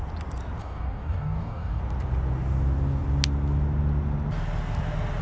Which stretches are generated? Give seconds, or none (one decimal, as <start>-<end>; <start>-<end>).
0.6-1.8